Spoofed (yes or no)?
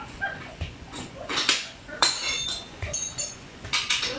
yes